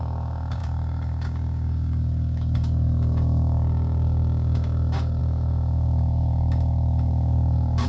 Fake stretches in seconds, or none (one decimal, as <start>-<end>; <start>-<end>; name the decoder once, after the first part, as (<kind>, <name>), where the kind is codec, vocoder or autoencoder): 0.0-7.9 (codec, DAC)